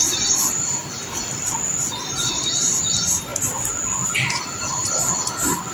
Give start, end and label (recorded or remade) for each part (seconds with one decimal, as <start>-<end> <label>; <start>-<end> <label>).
0.0-5.7 recorded

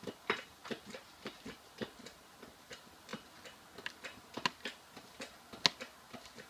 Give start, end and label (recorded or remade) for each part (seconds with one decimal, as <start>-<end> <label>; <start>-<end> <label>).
0.0-6.5 recorded

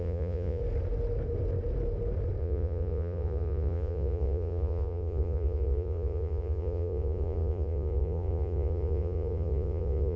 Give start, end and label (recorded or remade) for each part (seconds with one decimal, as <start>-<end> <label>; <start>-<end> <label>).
0.0-0.6 remade; 0.6-2.4 recorded; 2.4-10.2 remade

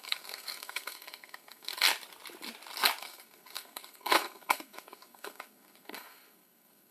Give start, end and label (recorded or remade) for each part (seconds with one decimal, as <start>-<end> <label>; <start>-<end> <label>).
0.0-1.7 remade; 1.7-3.0 recorded; 3.0-6.9 remade